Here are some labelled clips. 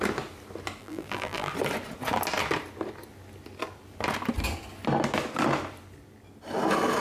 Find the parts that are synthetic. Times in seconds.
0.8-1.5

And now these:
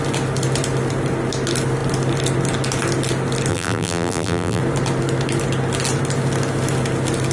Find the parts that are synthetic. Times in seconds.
3.5-4.6

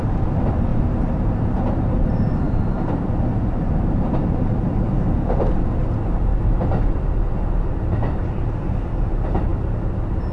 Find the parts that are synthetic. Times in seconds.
0.7-4.6

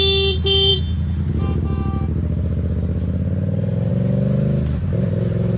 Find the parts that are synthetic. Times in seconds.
none

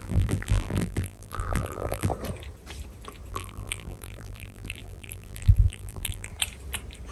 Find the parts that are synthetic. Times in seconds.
0.0-2.1; 3.3-6.3